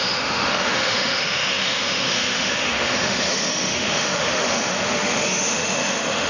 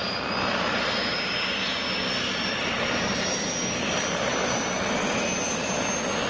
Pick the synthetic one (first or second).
first